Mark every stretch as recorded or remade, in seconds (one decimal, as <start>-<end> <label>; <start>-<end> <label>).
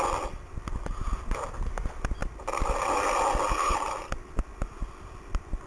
0.0-2.2 recorded; 2.2-5.3 remade; 5.3-5.7 recorded